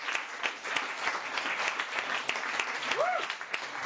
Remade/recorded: recorded